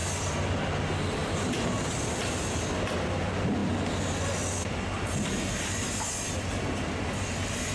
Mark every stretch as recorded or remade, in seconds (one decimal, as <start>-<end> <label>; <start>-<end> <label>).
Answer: 0.0-1.2 recorded; 1.2-2.0 remade; 2.0-7.7 recorded